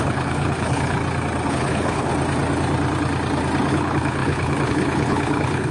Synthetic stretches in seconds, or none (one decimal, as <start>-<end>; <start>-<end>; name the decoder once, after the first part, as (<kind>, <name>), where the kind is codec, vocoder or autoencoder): 0.0-1.0 (codec, HILCodec); 1.5-2.1; 3.7-5.7

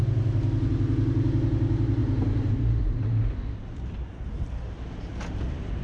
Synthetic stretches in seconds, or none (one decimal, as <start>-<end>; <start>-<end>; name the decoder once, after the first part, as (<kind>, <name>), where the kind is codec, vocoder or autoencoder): 2.0-5.8 (vocoder, BigVGAN v2)

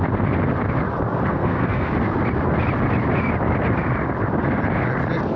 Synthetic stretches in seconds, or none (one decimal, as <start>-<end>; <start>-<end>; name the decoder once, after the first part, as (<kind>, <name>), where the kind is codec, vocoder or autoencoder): 1.3-1.9 (codec, SNAC)

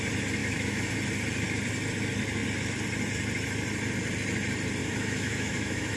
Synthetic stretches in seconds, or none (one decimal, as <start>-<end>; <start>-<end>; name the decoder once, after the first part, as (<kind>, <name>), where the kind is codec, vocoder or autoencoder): 0.4-0.9 (autoencoder, DAC-VAE); 4.8-6.0

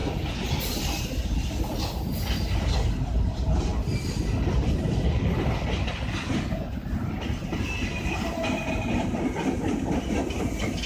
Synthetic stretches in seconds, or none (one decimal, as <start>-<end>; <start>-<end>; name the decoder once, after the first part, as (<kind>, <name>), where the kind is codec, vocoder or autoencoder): none

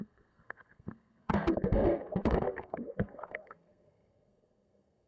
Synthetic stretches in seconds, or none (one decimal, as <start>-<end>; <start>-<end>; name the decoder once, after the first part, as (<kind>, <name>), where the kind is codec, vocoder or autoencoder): 0.0-5.1 (codec, SNAC)

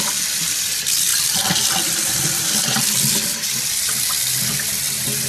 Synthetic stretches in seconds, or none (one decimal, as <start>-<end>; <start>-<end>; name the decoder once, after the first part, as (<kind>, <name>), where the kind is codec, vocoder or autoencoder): none

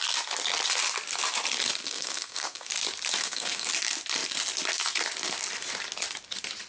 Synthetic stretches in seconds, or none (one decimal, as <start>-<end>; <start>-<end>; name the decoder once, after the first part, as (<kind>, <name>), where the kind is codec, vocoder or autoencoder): 1.8-2.7 (codec, SNAC); 3.2-3.7